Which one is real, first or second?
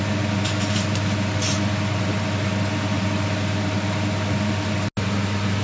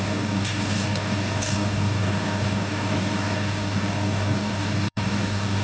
first